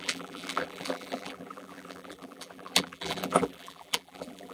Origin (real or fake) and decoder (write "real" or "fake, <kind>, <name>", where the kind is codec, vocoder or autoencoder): fake, vocoder, BigVGAN v2